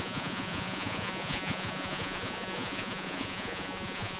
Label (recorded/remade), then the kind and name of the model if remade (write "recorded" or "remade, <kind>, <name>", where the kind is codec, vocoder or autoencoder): remade, vocoder, Vocos